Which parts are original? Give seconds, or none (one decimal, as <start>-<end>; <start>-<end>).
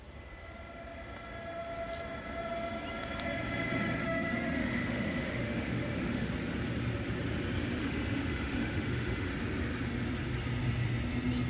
0.0-4.0; 6.3-7.8; 9.3-11.5